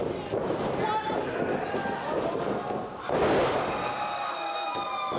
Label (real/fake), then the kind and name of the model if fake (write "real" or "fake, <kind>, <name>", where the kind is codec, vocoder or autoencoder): real